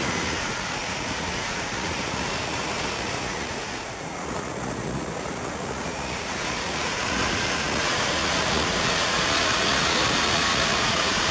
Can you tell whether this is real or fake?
fake